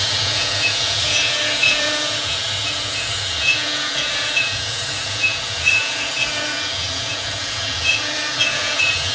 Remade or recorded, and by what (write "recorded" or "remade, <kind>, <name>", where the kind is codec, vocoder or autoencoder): remade, vocoder, Vocos